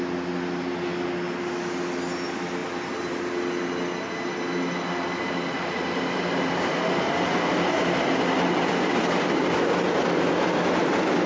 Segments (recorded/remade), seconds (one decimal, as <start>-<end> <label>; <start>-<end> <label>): 0.0-11.3 recorded